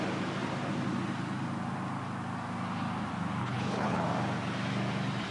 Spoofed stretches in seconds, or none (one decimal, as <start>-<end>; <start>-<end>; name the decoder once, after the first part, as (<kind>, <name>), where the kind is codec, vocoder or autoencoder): 3.4-4.0 (codec, HILCodec)